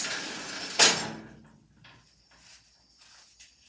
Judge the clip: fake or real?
real